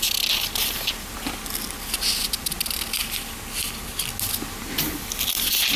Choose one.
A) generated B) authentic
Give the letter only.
B